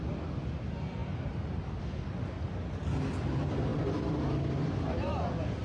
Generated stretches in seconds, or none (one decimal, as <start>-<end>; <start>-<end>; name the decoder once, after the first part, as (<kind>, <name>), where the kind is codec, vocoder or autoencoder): 1.0-1.8 (vocoder, BigVGAN v2)